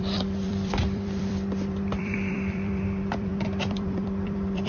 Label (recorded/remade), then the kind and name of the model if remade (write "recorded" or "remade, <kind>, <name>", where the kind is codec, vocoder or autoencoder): remade, vocoder, BigVGAN v2